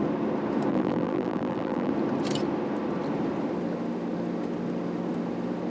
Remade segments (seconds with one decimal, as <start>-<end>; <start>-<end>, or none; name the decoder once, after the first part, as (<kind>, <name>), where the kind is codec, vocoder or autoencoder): 0.7-1.9 (vocoder, BigVGAN v2)